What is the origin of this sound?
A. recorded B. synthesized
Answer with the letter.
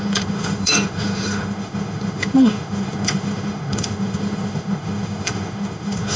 B